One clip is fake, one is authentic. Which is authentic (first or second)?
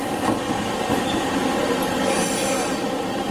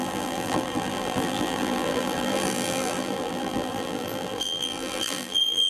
first